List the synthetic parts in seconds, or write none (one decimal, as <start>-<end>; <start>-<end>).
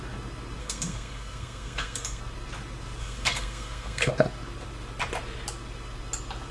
0.6-2.2; 3.0-4.1